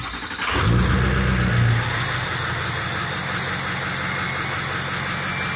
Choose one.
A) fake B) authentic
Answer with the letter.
B